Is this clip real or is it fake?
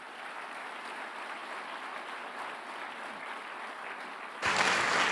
real